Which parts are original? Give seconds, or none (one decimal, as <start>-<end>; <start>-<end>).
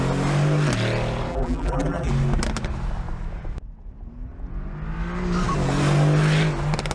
0.0-1.3; 2.1-6.9